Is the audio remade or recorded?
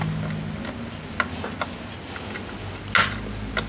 recorded